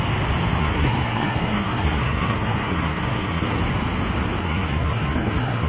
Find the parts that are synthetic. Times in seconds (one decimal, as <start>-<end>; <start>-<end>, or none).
0.6-3.6; 4.4-5.7